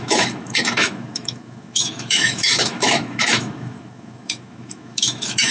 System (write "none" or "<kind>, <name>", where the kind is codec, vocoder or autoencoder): autoencoder, DAC-VAE